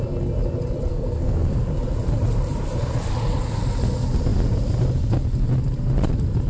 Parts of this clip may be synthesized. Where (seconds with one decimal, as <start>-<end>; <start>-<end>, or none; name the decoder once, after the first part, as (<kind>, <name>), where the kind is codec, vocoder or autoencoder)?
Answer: 0.9-1.7 (codec, SNAC)

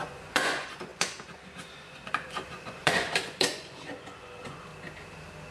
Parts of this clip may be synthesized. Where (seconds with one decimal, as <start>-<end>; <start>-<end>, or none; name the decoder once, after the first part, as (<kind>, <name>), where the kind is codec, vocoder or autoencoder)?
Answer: 0.0-4.7 (vocoder, Vocos)

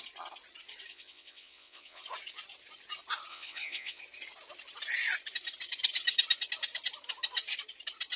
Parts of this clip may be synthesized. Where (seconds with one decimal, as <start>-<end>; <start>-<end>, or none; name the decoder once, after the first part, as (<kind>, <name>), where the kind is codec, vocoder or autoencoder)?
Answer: 0.9-2.0 (vocoder, WaveNeXt); 3.3-4.0

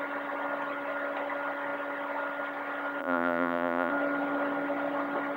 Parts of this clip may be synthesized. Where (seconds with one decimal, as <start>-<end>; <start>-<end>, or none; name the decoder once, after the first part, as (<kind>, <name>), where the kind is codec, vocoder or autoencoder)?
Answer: 3.0-3.9 (vocoder, BigVGAN v2)

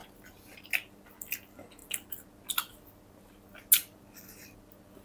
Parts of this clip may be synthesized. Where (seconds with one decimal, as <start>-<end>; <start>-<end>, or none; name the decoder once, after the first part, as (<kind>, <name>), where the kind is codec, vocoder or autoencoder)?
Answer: none

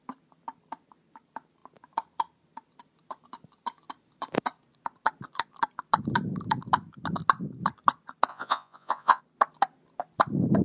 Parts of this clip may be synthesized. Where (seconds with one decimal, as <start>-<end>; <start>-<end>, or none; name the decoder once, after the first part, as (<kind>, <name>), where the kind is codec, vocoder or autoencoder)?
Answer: 8.3-9.2 (vocoder, Vocos)

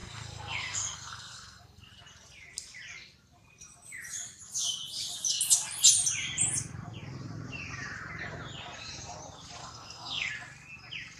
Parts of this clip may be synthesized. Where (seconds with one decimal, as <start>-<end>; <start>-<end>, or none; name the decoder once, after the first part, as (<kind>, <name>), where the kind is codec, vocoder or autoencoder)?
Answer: 0.0-1.9 (codec, SNAC); 9.6-10.3